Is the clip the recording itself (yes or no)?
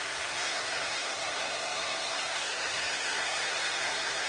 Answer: no